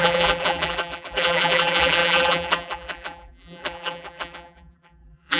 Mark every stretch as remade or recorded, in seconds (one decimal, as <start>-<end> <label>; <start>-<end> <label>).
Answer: 0.0-5.4 remade